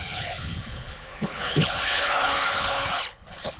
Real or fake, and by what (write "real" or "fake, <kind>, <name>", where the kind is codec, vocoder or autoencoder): fake, codec, HILCodec